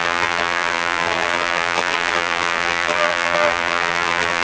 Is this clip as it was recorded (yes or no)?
no